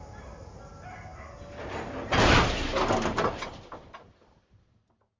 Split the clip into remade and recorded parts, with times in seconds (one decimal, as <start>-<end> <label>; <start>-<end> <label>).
0.0-5.2 recorded